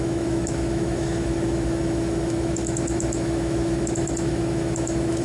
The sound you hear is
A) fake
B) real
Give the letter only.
A